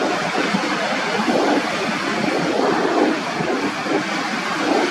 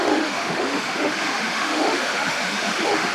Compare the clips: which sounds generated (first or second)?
second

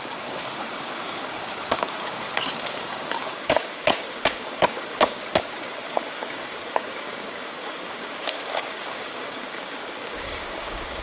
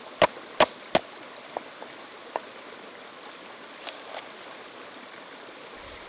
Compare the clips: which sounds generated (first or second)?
first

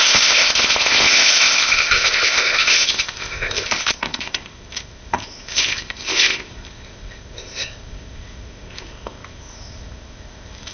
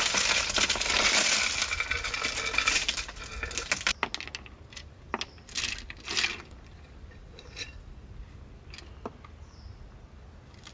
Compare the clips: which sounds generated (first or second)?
first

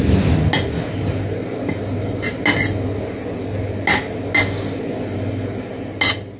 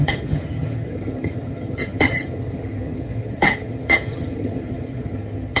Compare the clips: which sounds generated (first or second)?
second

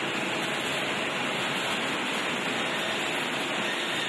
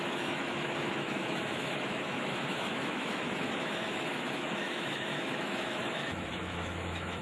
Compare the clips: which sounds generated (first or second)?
second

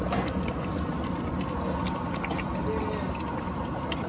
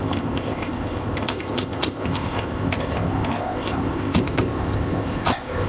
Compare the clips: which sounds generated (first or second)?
second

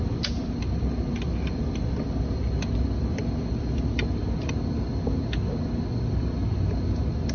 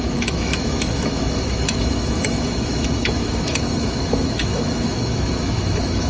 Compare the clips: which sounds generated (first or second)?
second